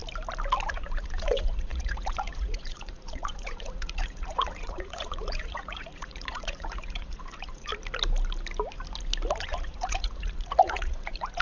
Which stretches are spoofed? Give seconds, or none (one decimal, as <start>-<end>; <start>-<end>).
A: 0.7-7.7; 9.4-11.4